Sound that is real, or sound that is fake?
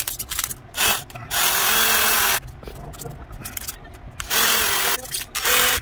real